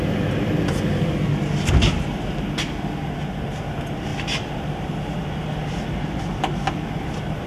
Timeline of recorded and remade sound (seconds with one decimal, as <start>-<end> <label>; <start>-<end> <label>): 0.0-7.5 recorded